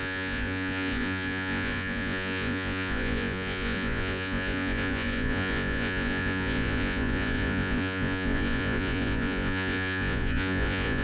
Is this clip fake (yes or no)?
yes